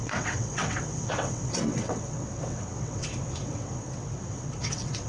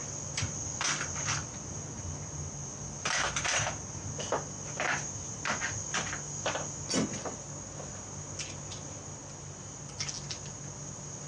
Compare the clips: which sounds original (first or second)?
second